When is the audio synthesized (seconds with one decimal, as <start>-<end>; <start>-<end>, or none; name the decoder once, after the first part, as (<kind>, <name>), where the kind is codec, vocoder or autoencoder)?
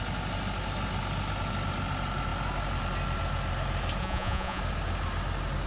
4.0-4.6 (vocoder, Vocos)